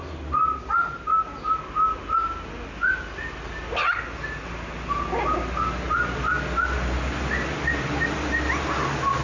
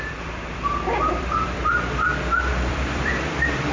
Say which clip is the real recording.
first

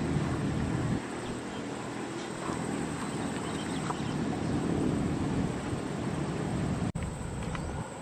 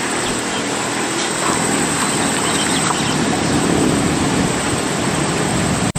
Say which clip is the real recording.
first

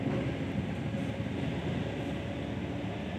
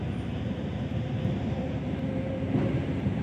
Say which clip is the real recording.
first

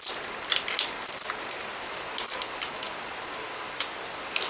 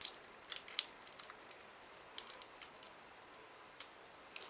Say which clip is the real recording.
first